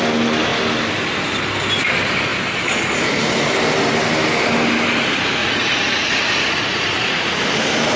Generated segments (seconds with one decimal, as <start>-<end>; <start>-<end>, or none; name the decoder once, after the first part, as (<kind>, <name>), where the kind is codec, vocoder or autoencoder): 5.4-7.3 (vocoder, Vocos)